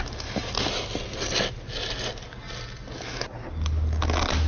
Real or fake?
real